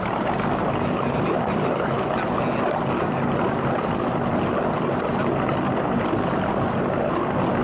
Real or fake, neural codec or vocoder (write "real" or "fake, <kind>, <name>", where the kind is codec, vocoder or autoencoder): real